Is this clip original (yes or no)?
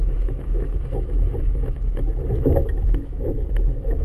no